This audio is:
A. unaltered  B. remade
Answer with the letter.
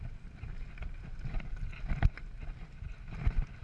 A